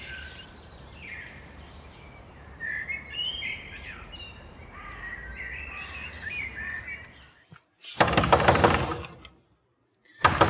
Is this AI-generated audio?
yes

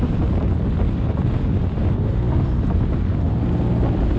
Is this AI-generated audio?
no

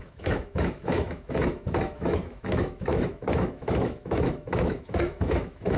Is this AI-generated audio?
yes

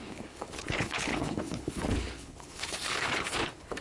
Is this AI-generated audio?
yes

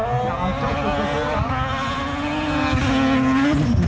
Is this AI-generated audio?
no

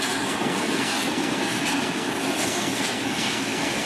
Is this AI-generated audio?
yes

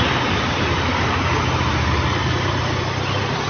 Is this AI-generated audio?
no